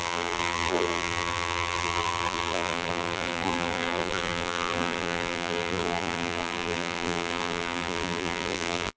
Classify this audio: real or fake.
fake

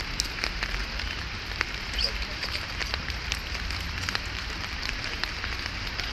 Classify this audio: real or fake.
fake